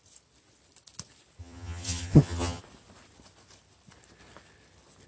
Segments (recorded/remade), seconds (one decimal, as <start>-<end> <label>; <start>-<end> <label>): 0.0-1.4 recorded; 1.4-2.6 remade; 2.6-5.1 recorded